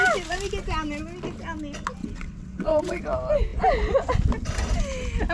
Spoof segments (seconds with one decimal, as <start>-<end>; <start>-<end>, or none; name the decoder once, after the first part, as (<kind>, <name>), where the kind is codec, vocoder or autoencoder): 2.0-3.0 (vocoder, WaveNeXt)

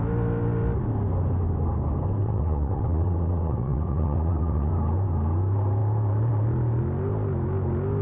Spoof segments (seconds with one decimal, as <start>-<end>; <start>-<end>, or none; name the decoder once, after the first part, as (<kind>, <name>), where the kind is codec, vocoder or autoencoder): 2.2-4.7 (vocoder, WaveNeXt)

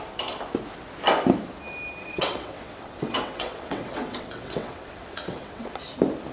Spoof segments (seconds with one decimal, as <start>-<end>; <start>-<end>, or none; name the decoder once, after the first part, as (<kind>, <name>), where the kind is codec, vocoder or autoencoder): 2.0-5.8 (vocoder, WaveNeXt)

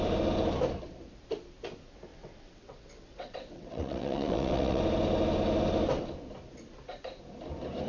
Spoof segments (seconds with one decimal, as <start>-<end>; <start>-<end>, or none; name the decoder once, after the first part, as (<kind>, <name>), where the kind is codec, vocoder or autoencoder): 2.1-4.8 (vocoder, WaveNeXt)

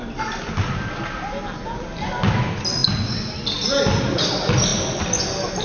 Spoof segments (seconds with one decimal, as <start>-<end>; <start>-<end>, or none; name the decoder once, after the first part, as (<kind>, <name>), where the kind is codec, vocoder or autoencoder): none

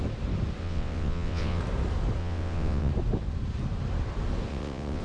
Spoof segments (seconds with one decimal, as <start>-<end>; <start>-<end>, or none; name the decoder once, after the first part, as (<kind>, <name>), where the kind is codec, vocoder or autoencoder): 0.6-1.6 (vocoder, WaveNeXt); 2.2-2.9; 4.5-5.0